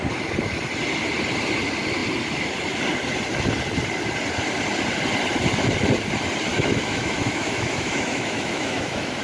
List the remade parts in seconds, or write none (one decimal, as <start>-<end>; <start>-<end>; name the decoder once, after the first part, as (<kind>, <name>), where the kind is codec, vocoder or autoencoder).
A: 6.5-9.2 (autoencoder, DAC-VAE)